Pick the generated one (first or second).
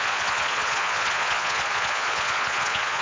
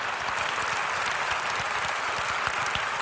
first